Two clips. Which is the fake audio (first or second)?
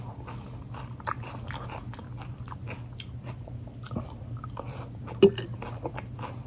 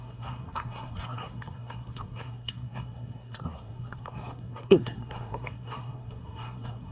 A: second